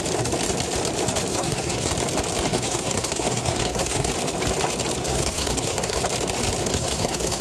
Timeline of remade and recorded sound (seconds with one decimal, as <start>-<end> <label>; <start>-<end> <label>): 0.0-1.3 recorded; 1.3-1.9 remade; 1.9-2.5 recorded; 2.5-4.1 remade; 4.1-5.0 recorded; 5.0-6.0 remade; 6.0-6.6 recorded; 6.6-7.4 remade